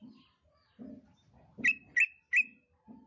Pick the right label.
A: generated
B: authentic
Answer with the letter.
B